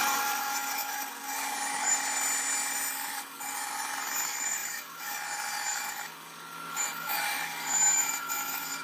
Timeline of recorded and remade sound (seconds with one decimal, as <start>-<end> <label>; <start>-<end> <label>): 0.0-1.9 remade; 1.9-2.9 recorded; 2.9-8.8 remade